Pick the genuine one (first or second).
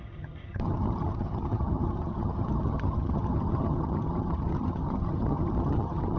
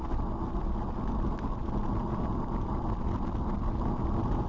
second